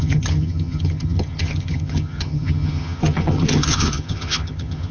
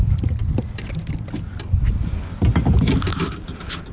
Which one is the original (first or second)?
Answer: second